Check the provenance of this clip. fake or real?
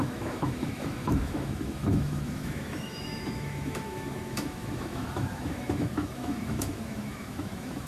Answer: fake